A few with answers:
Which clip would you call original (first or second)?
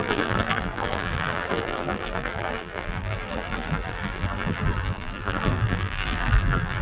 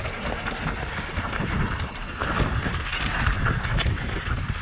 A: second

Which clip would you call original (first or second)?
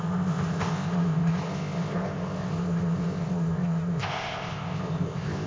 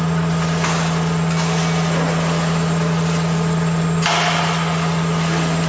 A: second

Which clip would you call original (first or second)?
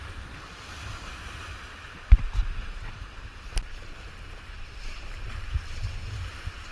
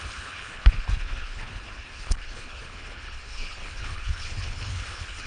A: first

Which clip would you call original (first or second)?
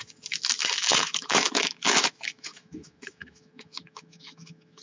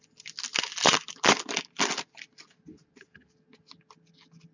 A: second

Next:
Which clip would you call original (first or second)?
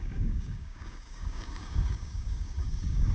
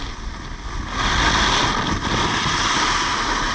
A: second